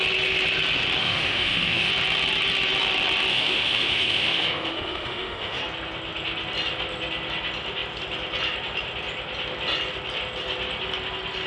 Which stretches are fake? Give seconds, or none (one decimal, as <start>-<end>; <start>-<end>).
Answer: 1.0-1.9; 3.3-5.6